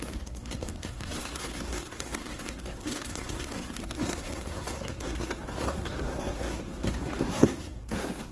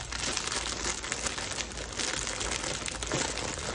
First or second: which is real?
second